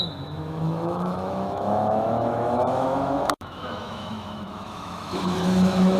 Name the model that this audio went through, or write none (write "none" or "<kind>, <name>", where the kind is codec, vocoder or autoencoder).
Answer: autoencoder, DAC-VAE